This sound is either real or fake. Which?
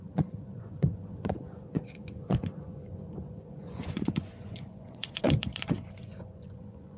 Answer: fake